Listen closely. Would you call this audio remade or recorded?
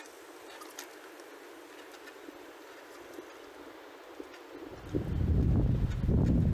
recorded